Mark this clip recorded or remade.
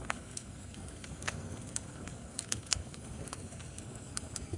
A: remade